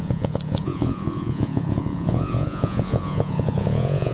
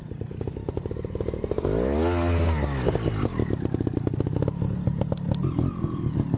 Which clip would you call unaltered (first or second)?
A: second